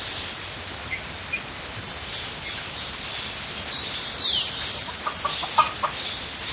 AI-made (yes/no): no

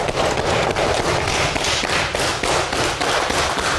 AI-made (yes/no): no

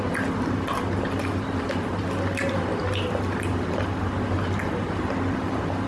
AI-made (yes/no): no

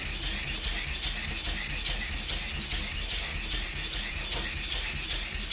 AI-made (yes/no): no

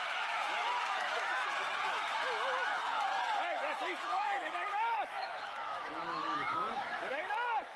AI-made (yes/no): yes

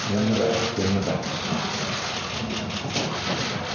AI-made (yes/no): no